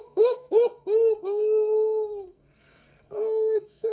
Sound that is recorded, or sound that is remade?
remade